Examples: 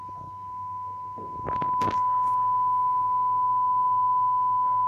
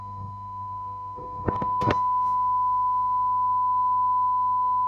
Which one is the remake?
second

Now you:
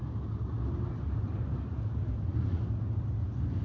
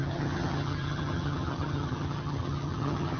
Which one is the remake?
second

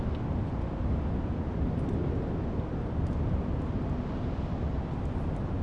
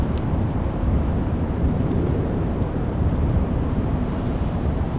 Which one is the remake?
second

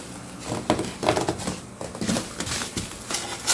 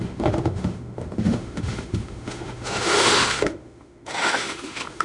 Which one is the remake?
second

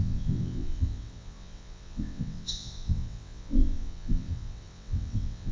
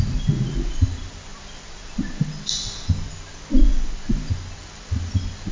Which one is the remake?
first